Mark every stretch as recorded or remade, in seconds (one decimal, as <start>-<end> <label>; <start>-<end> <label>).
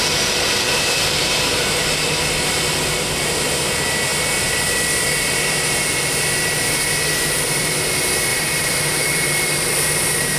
0.0-8.3 recorded; 8.3-10.4 remade